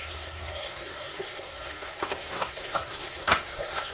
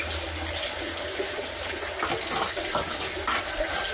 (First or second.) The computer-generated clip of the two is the first